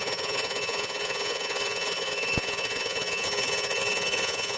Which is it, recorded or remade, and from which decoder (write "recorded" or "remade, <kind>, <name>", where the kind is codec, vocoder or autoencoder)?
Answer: remade, vocoder, Vocos